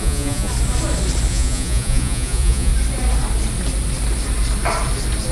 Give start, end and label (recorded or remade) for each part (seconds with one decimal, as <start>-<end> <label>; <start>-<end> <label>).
0.0-0.5 remade; 0.5-1.3 recorded; 1.3-2.7 remade; 2.7-5.3 recorded